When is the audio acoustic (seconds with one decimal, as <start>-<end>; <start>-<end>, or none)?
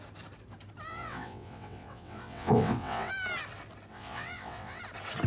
0.0-0.9; 3.1-3.9; 4.8-5.3